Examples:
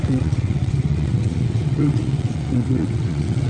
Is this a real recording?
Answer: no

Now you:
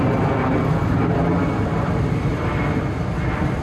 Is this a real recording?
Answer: yes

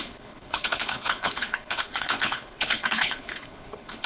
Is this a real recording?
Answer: no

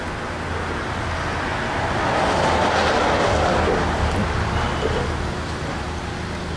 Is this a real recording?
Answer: yes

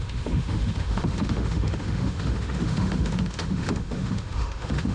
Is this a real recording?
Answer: no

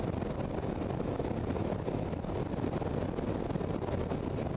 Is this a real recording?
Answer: yes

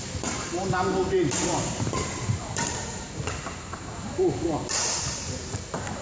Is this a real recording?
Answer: no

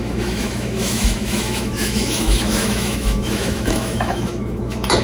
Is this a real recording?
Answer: no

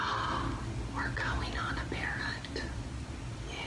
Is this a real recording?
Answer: yes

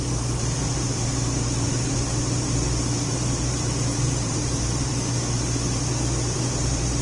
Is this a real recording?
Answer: no